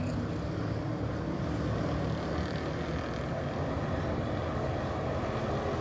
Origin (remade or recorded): recorded